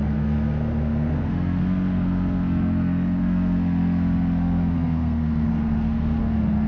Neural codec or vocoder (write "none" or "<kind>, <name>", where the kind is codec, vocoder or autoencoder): codec, SNAC